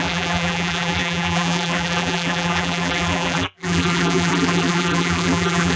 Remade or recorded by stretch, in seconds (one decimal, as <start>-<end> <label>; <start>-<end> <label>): 0.0-5.8 remade